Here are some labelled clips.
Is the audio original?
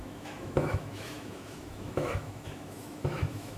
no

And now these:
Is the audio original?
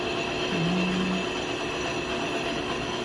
yes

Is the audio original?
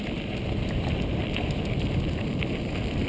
yes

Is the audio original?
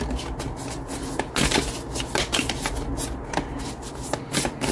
yes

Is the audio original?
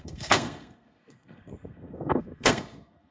no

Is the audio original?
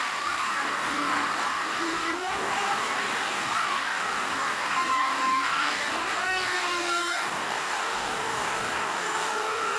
no